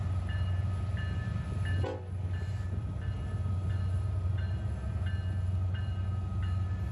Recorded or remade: recorded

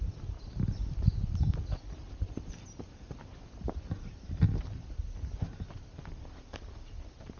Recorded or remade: recorded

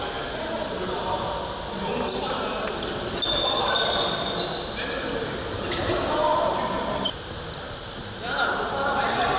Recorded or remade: recorded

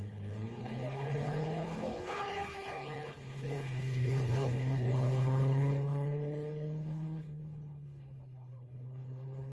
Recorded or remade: remade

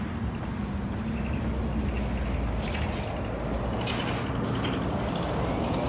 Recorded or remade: recorded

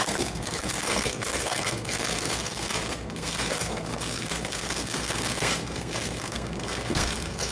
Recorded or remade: remade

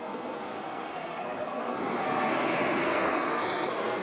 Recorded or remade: remade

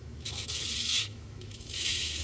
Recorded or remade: remade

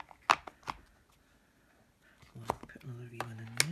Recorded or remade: recorded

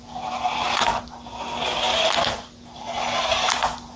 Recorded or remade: recorded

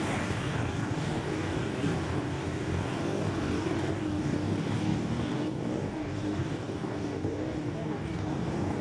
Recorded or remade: remade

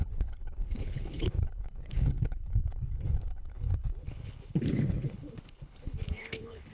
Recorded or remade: remade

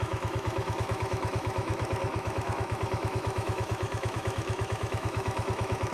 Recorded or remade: remade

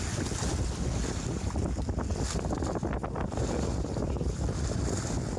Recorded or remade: recorded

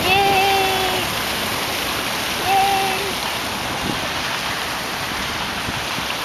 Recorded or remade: recorded